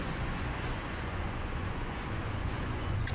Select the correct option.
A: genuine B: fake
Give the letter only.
B